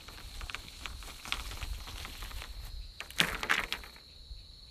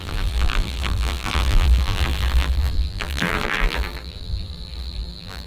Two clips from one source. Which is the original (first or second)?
first